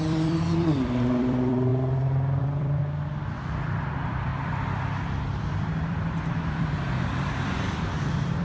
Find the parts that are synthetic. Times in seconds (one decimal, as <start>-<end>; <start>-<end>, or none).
0.0-1.7; 2.4-2.8; 3.3-4.3; 5.2-8.4